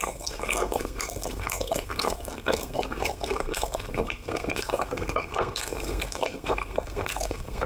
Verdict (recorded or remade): remade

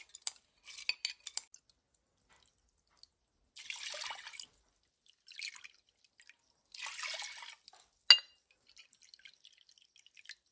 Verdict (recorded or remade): recorded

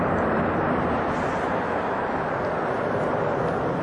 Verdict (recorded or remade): recorded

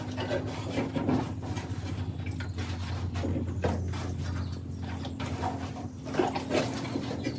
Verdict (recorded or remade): recorded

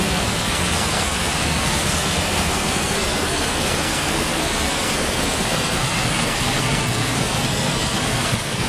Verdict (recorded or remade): remade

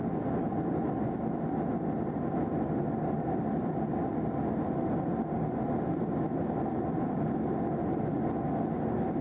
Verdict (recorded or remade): recorded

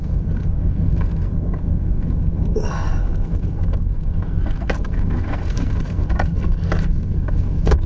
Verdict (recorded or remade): remade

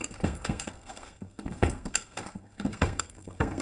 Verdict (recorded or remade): remade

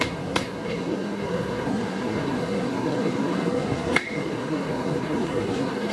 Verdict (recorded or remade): remade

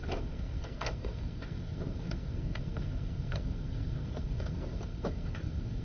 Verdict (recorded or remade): remade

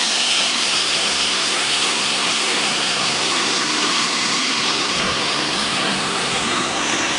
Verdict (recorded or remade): remade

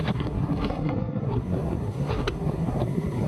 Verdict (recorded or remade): remade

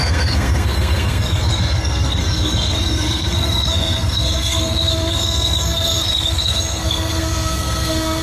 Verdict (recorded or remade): remade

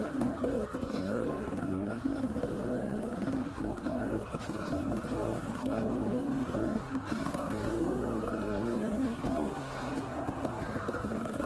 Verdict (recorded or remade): remade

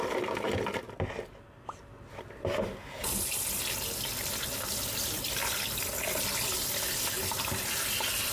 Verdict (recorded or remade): recorded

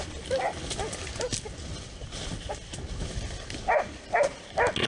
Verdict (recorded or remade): recorded